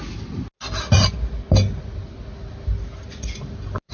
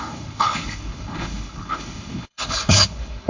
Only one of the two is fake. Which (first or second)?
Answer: second